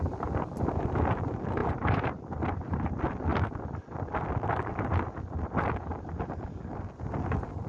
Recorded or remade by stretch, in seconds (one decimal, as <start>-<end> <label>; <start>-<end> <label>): 0.0-1.6 recorded; 1.6-2.9 remade; 2.9-7.7 recorded